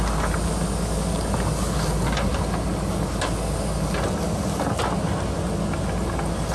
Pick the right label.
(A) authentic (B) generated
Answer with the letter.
A